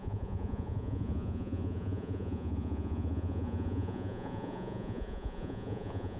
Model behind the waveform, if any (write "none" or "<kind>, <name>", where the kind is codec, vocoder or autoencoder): vocoder, Vocos